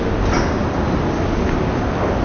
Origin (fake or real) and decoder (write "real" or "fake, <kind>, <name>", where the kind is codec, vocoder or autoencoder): real